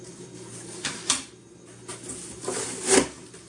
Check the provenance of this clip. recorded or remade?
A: recorded